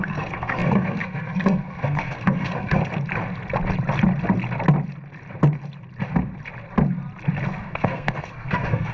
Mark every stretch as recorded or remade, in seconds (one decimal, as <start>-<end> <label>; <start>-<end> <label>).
0.0-2.8 remade; 2.8-7.6 recorded; 7.6-8.9 remade